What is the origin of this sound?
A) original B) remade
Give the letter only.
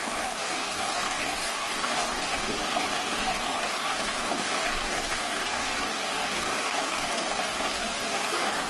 B